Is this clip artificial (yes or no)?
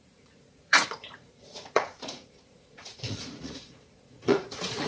yes